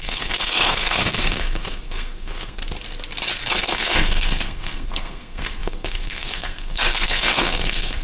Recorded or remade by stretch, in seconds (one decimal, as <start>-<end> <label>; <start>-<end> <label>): 0.0-2.6 remade; 2.6-3.5 recorded; 3.5-8.0 remade